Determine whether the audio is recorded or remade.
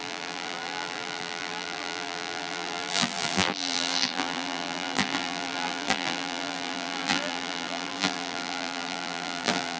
remade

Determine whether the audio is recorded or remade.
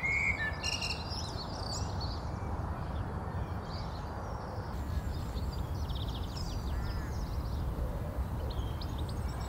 recorded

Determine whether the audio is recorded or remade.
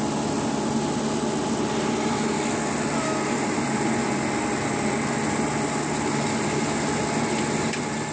recorded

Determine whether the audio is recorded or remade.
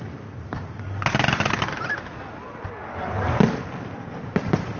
recorded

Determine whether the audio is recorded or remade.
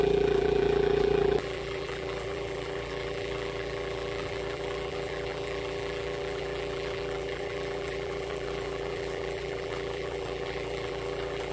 remade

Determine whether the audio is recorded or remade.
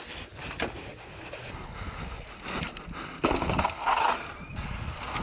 recorded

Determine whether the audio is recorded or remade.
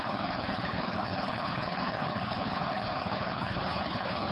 remade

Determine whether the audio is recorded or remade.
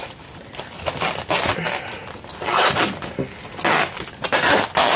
recorded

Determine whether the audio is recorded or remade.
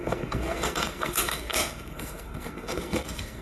remade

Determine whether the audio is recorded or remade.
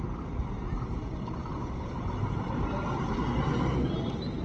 recorded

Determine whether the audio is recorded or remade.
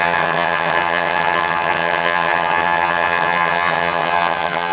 remade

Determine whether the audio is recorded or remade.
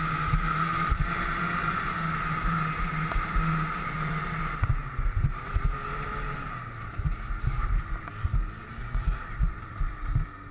remade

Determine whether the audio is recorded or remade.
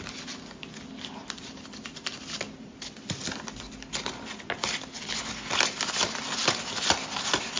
recorded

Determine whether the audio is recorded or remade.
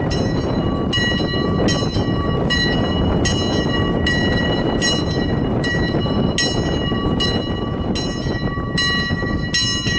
recorded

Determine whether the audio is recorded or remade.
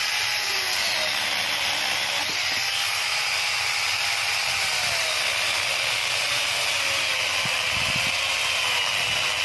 recorded